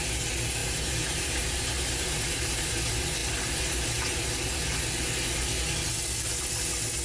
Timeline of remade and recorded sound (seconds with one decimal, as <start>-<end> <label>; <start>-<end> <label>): 0.0-0.6 recorded; 0.6-2.7 remade; 2.7-7.0 recorded